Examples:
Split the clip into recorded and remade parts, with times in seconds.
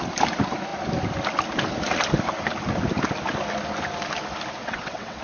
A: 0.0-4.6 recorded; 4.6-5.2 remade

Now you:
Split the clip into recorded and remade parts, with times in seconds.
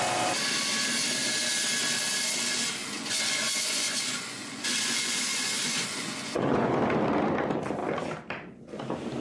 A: 0.0-2.8 recorded; 2.8-6.7 remade; 6.7-9.2 recorded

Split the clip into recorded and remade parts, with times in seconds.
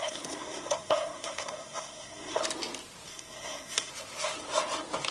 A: 0.0-2.4 remade; 2.4-3.1 recorded; 3.1-3.9 remade; 3.9-5.1 recorded